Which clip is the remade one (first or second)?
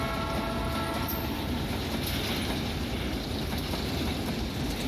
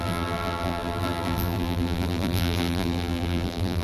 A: second